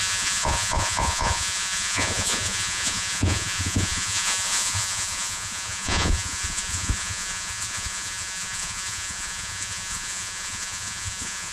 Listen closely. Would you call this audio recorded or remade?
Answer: remade